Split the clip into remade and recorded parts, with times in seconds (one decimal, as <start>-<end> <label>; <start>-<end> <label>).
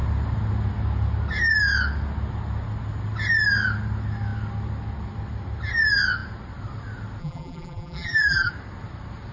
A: 0.0-7.2 recorded; 7.2-8.5 remade; 8.5-9.3 recorded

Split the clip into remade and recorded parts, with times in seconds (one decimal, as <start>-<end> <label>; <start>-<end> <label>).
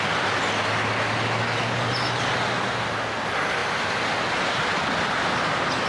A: 0.0-5.9 recorded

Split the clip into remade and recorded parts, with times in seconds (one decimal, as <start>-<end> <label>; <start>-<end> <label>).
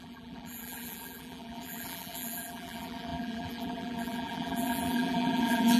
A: 0.0-5.8 remade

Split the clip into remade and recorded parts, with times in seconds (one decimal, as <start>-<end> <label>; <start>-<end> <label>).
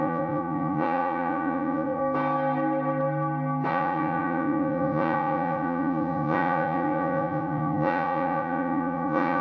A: 0.0-2.0 remade; 2.0-3.7 recorded; 3.7-9.4 remade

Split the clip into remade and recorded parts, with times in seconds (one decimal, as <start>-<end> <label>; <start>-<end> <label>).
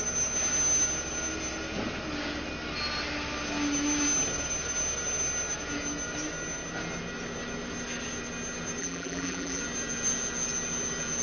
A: 0.0-8.8 recorded; 8.8-9.6 remade; 9.6-11.2 recorded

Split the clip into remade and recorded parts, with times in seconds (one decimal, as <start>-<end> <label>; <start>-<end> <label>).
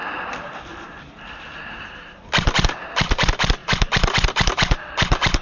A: 0.0-5.4 recorded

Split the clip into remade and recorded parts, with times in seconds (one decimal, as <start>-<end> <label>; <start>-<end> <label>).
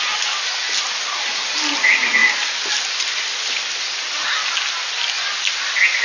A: 0.0-6.0 recorded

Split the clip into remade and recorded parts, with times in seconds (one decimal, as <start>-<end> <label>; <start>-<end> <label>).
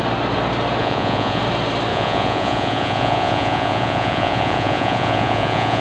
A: 0.0-0.8 recorded; 0.8-1.4 remade; 1.4-1.9 recorded; 1.9-5.8 remade